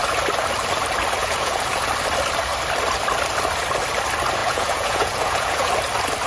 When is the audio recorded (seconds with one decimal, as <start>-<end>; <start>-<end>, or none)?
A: 0.0-1.2; 1.9-4.4; 5.7-6.3